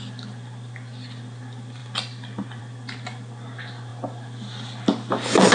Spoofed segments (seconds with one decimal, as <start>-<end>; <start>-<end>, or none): none